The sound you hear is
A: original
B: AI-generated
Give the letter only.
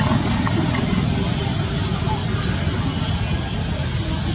A